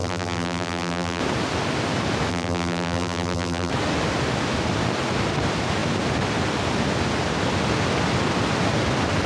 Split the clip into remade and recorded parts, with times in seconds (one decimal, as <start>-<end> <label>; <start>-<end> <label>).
0.0-1.2 remade; 1.2-2.3 recorded; 2.3-3.7 remade; 3.7-9.3 recorded